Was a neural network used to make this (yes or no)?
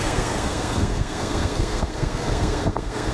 yes